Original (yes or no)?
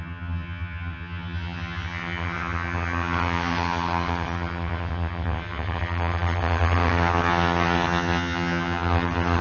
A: no